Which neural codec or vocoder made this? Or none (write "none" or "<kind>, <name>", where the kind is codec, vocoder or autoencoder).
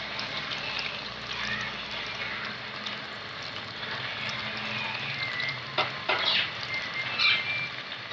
none